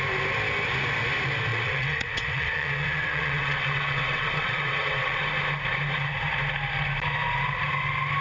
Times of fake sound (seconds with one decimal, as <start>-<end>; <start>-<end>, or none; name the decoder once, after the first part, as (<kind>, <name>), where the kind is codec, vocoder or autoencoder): 1.5-5.2 (vocoder, WaveNeXt)